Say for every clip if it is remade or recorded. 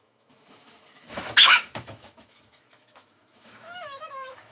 remade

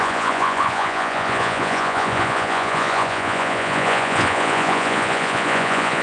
remade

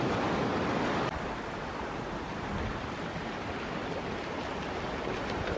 recorded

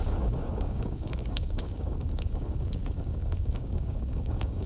remade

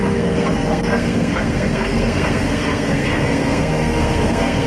remade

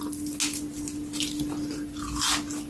recorded